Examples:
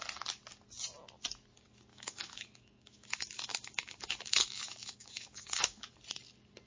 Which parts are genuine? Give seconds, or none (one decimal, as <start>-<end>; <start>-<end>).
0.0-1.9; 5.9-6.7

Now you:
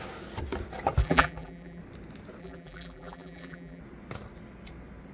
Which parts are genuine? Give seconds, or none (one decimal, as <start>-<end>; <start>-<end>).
0.0-1.0; 1.8-2.4; 3.8-5.1

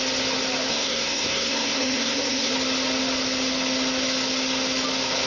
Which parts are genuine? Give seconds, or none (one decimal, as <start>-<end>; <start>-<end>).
0.0-0.7; 2.5-5.3

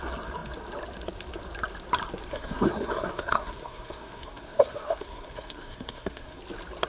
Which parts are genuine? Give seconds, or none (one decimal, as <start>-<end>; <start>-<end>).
0.0-2.3; 6.4-6.9

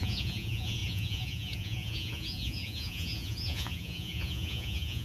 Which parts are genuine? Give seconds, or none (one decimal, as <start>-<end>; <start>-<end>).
none